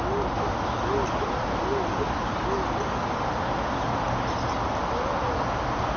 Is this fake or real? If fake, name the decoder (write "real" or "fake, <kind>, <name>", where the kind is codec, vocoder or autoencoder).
real